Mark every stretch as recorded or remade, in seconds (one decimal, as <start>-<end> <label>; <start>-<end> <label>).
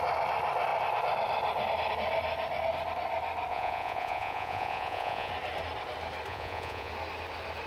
0.0-3.5 recorded; 3.5-5.3 remade; 5.3-6.3 recorded; 6.3-6.9 remade; 6.9-7.7 recorded